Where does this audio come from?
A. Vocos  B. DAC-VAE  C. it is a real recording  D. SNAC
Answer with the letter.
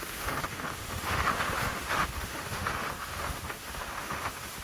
B